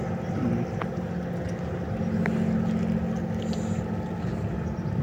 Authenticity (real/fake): real